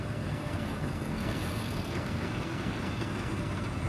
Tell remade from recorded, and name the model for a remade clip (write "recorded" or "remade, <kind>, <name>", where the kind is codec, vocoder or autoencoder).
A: remade, codec, SNAC